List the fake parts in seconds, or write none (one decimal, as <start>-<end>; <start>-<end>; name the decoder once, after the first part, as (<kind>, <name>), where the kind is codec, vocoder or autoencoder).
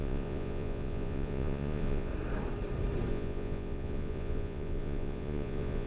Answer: 0.0-2.1 (vocoder, Vocos); 3.1-5.9